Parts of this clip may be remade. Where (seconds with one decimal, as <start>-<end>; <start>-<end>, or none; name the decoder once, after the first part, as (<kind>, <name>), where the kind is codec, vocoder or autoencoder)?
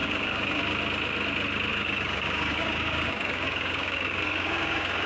0.0-0.6 (codec, DAC); 1.7-5.1